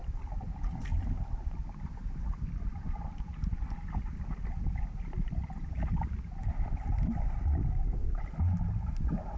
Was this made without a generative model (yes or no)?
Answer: yes